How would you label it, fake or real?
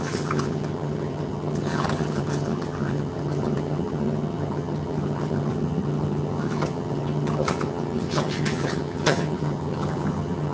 fake